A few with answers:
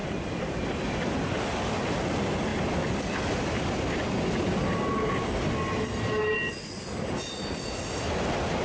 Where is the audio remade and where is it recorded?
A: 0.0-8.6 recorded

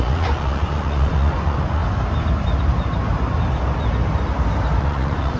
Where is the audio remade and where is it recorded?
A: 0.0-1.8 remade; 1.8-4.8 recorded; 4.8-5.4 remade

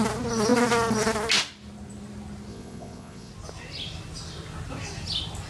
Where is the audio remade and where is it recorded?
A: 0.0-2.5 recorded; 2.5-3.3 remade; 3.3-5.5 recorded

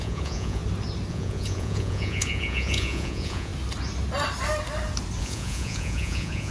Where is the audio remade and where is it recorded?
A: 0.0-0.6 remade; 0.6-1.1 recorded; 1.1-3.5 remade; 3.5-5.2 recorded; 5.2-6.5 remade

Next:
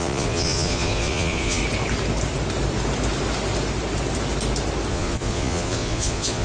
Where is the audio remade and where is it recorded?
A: 0.0-1.6 remade; 1.6-4.9 recorded; 4.9-6.4 remade

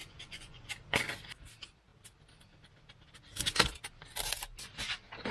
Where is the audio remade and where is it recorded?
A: 0.0-0.7 remade; 0.7-5.3 recorded